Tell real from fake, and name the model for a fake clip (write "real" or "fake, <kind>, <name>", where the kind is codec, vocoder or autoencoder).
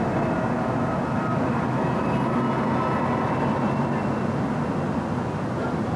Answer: real